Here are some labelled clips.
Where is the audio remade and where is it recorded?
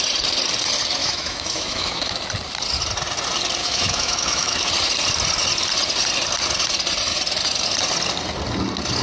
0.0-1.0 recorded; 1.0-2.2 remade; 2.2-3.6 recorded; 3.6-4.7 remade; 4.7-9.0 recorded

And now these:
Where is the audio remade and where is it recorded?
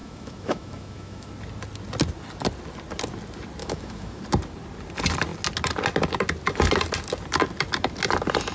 0.0-1.3 remade; 1.3-3.6 recorded; 3.6-4.2 remade; 4.2-8.5 recorded